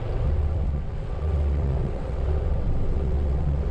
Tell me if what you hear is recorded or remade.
remade